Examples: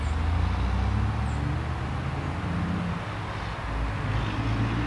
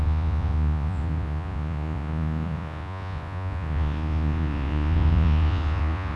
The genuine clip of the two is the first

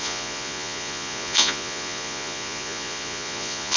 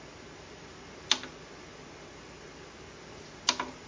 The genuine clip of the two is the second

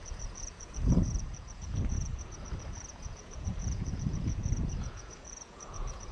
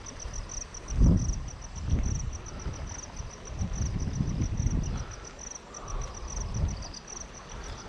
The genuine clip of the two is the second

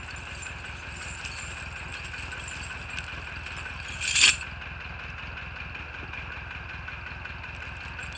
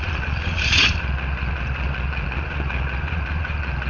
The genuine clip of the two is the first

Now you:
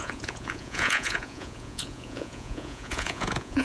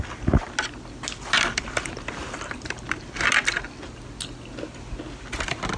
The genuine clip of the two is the second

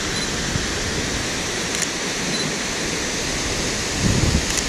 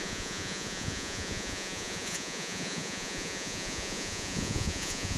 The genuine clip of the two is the first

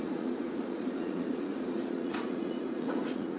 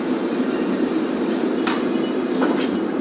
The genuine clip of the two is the second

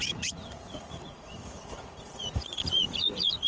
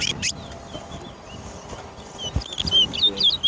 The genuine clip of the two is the second